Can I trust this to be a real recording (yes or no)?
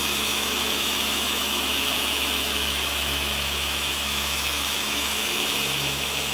no